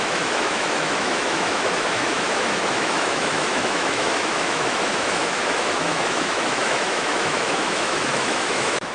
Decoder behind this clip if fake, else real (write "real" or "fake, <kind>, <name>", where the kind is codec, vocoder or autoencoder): fake, autoencoder, DAC-VAE